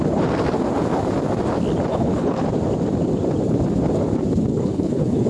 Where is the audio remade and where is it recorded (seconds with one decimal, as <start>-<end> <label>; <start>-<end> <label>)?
0.0-1.9 recorded; 1.9-2.4 remade; 2.4-4.5 recorded; 4.5-5.3 remade